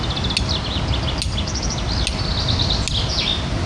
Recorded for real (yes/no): yes